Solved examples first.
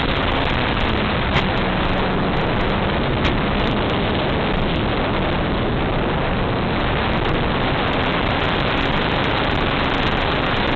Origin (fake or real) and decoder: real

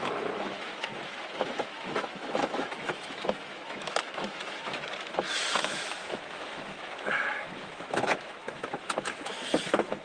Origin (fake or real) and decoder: fake, autoencoder, DAC-VAE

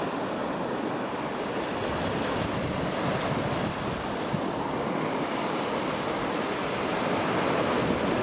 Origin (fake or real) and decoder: real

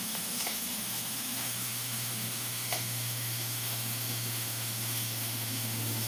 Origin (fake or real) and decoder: fake, autoencoder, DAC-VAE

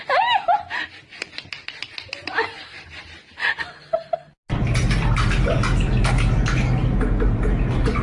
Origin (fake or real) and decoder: real